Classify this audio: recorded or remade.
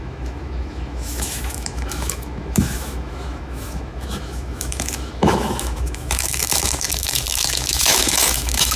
remade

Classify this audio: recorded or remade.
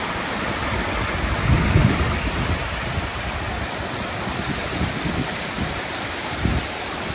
recorded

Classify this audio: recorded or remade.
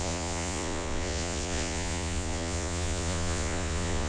remade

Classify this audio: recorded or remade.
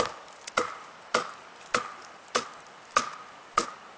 recorded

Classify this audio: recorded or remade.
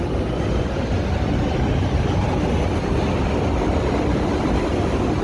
recorded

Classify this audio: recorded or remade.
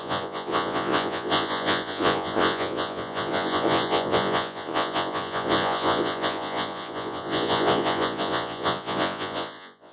remade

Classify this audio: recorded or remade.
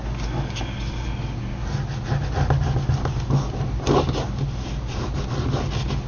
recorded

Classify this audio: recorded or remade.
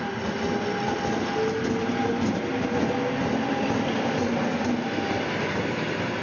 recorded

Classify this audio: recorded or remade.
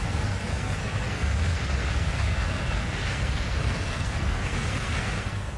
remade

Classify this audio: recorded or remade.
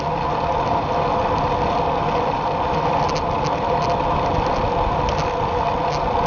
recorded